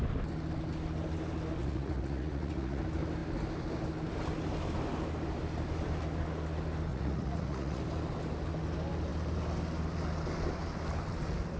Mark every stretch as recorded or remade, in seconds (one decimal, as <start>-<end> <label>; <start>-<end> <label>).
0.0-1.6 recorded; 1.6-2.8 remade; 2.8-6.9 recorded; 6.9-7.8 remade; 7.8-11.6 recorded